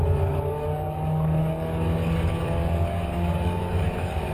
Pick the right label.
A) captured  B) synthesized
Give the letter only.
B